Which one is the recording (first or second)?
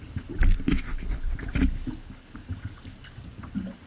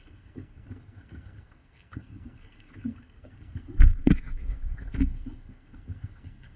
first